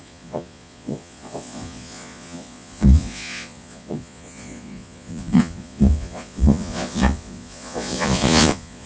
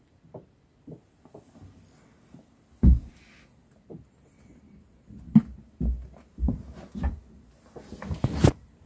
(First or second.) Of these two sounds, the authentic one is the second